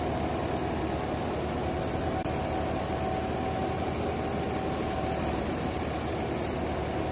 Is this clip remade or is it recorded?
recorded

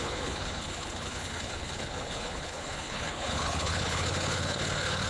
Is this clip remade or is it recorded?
remade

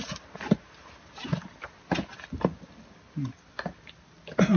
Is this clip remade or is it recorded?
recorded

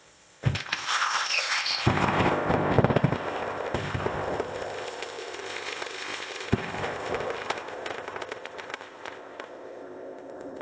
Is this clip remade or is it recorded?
remade